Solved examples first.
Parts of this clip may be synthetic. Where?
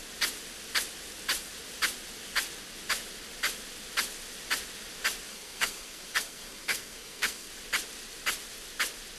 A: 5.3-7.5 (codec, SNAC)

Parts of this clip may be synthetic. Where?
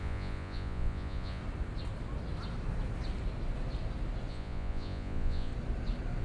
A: 0.0-1.4 (vocoder, Vocos); 4.3-5.5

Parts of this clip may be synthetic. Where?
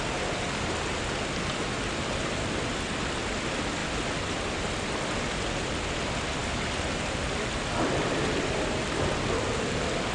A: none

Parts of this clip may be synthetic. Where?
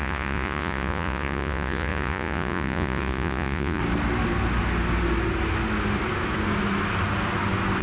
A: 0.0-3.8 (vocoder, Vocos)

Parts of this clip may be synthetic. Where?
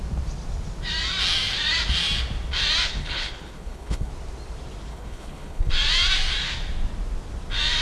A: 2.9-4.1 (codec, HILCodec); 4.9-5.7